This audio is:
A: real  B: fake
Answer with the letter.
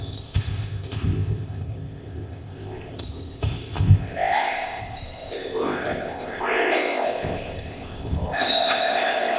B